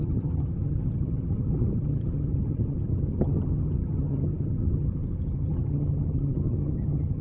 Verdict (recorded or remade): remade